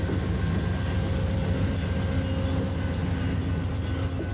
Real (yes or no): yes